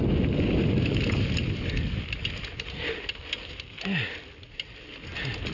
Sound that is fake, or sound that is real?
real